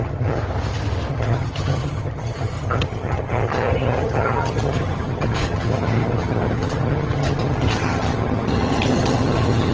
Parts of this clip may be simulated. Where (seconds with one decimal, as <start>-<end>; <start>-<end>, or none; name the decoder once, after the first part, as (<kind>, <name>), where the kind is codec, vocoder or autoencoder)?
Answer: 0.0-0.4 (vocoder, HiFi-GAN); 1.1-9.7

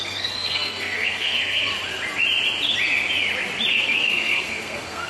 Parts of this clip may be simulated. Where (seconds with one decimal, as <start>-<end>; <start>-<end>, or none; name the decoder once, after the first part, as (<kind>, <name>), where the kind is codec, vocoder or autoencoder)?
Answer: 0.0-1.7 (codec, SNAC); 3.7-5.1

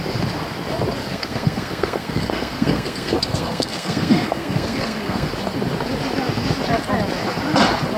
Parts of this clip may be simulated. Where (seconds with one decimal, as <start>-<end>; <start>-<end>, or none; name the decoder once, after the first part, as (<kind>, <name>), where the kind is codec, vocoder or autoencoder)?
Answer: 1.0-5.3 (codec, SNAC)